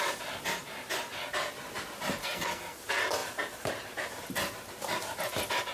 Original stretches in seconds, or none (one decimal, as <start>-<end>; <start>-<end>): 0.0-2.2; 2.8-5.7